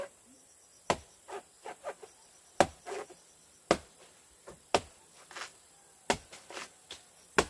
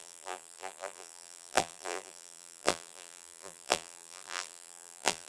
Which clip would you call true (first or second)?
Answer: first